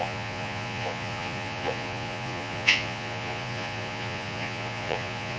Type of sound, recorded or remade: remade